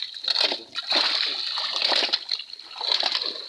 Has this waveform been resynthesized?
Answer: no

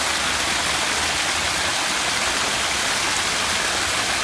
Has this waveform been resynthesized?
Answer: no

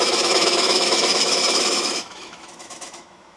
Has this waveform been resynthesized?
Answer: yes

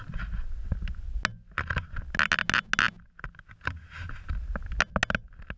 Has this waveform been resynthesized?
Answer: no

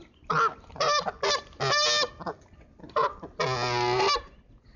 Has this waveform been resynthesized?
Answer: no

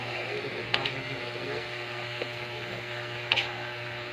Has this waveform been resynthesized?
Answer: yes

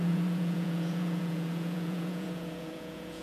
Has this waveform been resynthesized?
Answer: yes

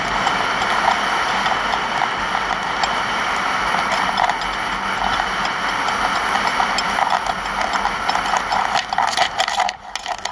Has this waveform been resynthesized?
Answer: no